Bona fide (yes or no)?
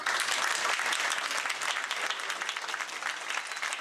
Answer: yes